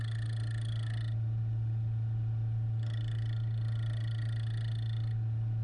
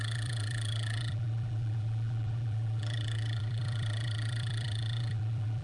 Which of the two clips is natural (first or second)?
first